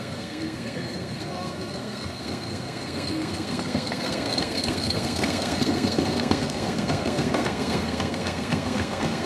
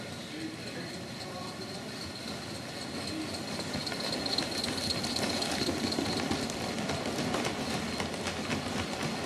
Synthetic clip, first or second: first